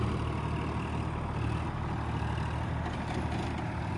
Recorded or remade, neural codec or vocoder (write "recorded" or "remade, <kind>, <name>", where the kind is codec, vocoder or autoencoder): recorded